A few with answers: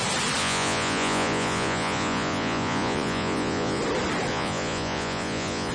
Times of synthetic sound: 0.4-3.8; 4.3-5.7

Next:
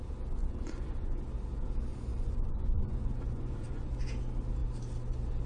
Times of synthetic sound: 0.4-1.2; 1.9-3.9

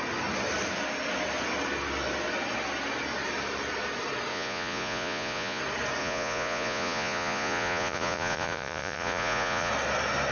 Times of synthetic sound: 4.3-5.6; 6.0-9.7

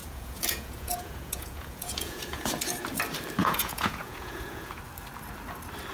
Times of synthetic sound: 0.0-2.5; 3.4-4.8

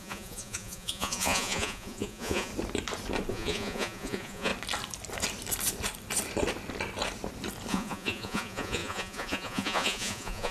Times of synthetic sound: 0.0-2.5; 3.3-4.5; 7.7-10.5

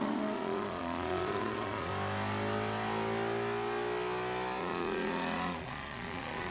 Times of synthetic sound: 0.0-1.9; 4.6-6.5

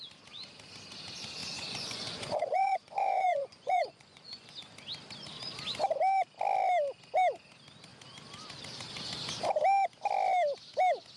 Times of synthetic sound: 1.4-4.5

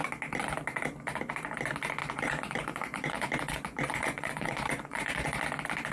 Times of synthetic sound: 2.0-5.4